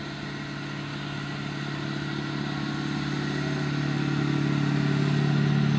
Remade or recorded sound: recorded